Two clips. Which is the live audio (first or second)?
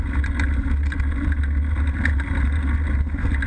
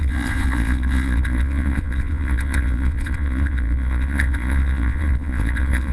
first